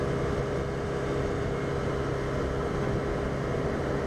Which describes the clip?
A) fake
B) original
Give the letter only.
B